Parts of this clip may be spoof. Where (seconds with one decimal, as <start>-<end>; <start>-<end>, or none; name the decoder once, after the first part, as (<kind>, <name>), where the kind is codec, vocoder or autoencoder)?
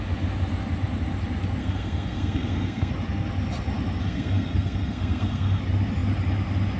1.6-2.9 (codec, SNAC); 4.0-5.6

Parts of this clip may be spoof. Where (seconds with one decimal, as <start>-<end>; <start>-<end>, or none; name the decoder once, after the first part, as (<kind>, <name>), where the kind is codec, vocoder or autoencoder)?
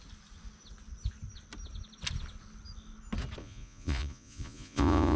3.4-5.2 (vocoder, Vocos)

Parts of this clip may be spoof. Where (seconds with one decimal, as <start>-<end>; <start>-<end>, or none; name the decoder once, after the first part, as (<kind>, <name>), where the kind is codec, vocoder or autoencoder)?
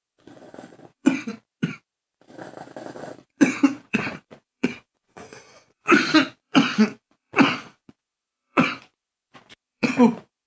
0.0-1.3 (vocoder, Vocos); 3.0-10.5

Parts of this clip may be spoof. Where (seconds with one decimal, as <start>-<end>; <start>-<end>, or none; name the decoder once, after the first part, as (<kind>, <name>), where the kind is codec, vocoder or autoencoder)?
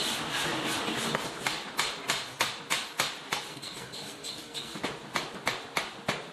3.5-4.8 (codec, SNAC)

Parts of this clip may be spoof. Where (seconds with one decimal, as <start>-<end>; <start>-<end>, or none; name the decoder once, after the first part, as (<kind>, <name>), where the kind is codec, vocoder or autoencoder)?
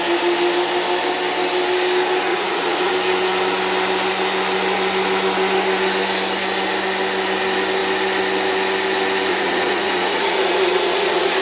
2.3-2.9 (vocoder, Vocos); 9.3-11.4